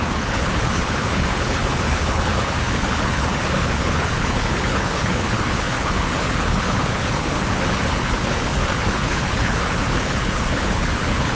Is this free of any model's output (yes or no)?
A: no